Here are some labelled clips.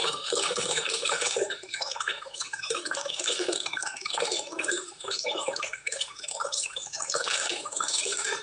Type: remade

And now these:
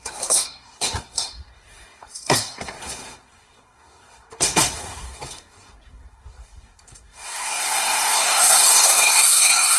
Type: remade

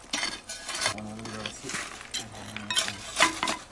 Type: recorded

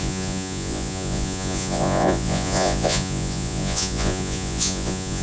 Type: remade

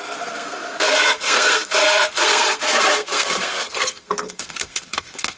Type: remade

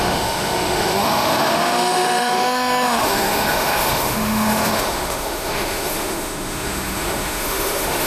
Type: remade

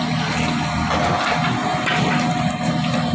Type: recorded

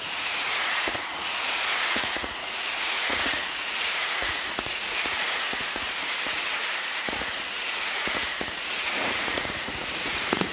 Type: remade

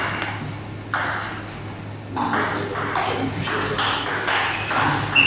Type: recorded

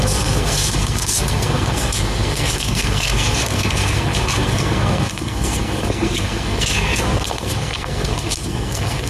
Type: remade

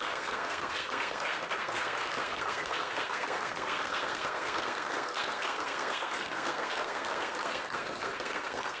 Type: remade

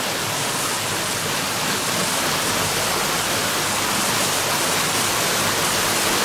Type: recorded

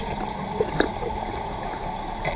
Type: recorded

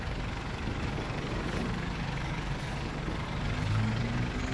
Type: remade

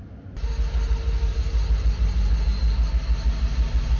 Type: recorded